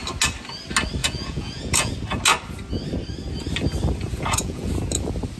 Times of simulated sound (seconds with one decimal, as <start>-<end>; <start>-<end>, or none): 1.0-1.9; 4.1-4.7